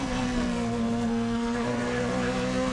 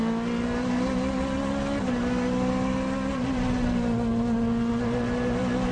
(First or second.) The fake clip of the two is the first